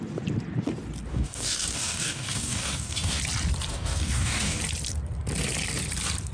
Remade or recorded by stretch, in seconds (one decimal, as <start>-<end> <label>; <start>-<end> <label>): 0.0-1.1 recorded; 1.1-3.2 remade; 3.2-3.7 recorded; 3.7-4.6 remade; 4.6-6.3 recorded